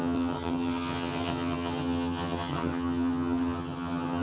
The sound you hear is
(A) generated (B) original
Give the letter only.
A